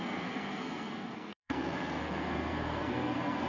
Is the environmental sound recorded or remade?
remade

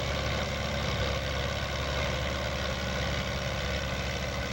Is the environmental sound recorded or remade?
recorded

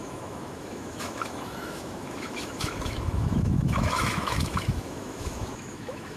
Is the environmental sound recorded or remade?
remade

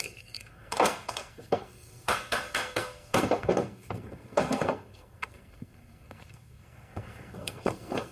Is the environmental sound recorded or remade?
remade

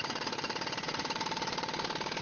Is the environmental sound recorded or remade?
remade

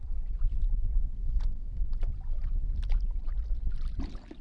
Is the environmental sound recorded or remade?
remade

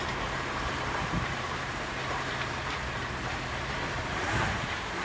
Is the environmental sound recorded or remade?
remade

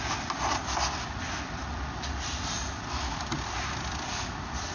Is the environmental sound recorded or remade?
recorded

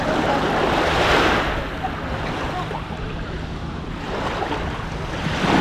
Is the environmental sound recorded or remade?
recorded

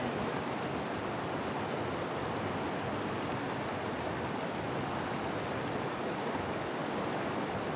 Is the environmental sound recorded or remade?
recorded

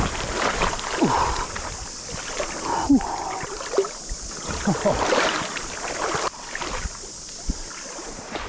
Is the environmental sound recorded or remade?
recorded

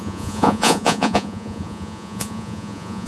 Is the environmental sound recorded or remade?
remade